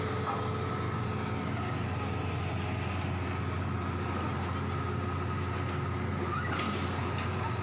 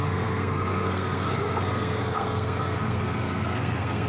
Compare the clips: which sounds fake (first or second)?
second